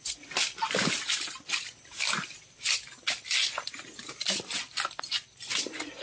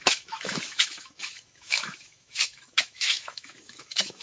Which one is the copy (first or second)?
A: second